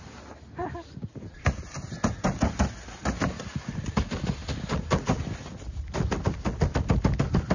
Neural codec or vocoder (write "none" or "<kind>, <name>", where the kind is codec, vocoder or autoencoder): none